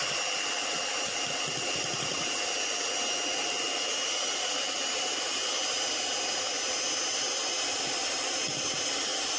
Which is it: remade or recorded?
recorded